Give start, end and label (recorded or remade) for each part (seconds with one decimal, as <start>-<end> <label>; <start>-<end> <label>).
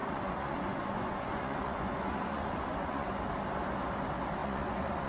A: 0.0-3.1 remade; 3.1-4.4 recorded; 4.4-5.1 remade